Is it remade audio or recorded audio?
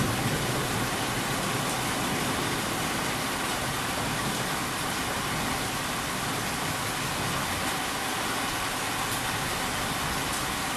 recorded